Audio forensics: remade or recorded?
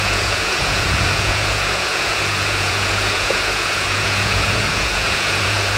remade